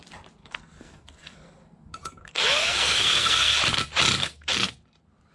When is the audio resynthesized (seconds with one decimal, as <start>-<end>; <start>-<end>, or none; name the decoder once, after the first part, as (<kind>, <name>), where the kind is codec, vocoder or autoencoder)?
0.4-3.6 (codec, SNAC); 4.2-4.7